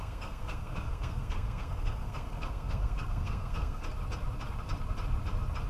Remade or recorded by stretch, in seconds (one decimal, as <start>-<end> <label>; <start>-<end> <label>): 0.0-3.8 remade; 3.8-5.7 recorded